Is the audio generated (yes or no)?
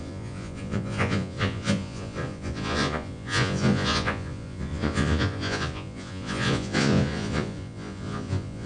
yes